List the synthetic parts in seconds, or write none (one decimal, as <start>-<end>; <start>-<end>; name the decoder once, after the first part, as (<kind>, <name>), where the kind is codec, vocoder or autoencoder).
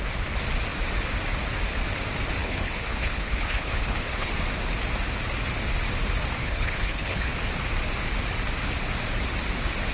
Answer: 2.4-4.3 (codec, HILCodec); 6.4-7.3